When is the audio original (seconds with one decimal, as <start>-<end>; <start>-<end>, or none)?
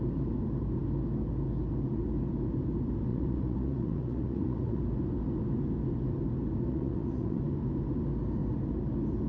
0.0-3.1; 4.8-6.7; 7.4-9.3